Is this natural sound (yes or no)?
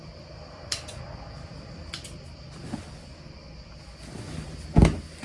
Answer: yes